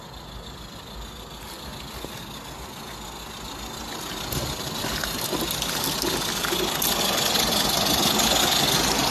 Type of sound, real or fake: real